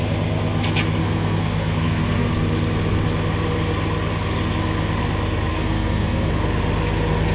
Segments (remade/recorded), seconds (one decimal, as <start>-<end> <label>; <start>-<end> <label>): 0.0-1.0 recorded; 1.0-2.3 remade; 2.3-5.5 recorded; 5.5-6.3 remade; 6.3-7.3 recorded